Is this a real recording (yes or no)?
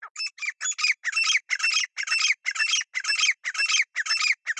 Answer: yes